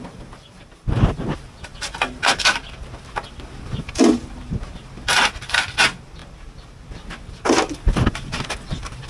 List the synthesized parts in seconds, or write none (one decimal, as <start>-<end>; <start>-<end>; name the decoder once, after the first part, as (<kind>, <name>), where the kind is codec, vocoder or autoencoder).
none